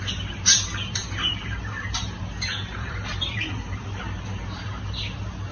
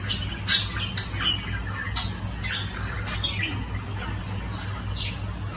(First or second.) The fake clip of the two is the first